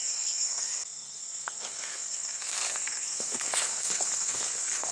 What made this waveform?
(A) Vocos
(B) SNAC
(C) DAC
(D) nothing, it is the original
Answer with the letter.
B